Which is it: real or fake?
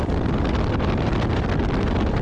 real